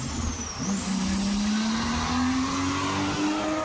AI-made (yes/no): no